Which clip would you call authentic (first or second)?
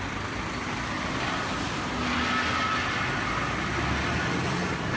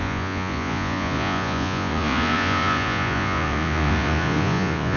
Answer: first